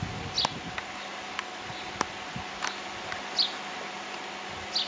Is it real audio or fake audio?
real